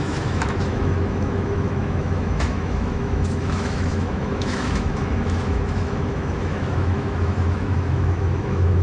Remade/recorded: remade